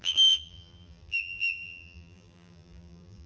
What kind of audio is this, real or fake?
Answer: fake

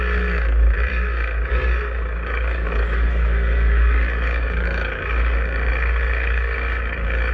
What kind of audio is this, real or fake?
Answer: fake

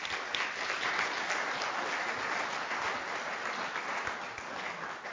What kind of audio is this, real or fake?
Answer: real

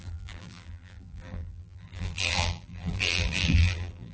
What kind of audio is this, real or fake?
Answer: fake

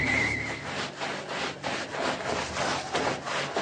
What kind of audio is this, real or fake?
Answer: fake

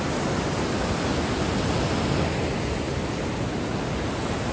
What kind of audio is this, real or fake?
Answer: real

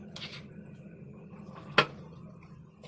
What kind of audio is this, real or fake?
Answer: real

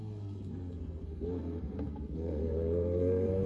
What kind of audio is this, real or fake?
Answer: fake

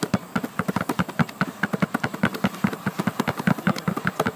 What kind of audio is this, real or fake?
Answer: real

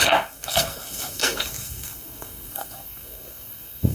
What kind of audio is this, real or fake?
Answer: fake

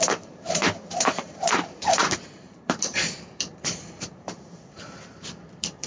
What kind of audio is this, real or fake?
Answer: fake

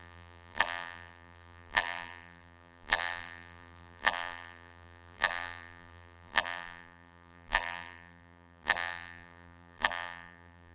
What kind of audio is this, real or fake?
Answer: fake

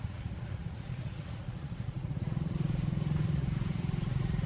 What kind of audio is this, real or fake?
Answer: fake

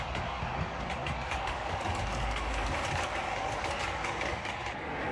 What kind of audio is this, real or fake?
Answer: fake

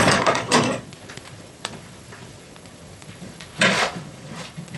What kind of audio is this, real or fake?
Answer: fake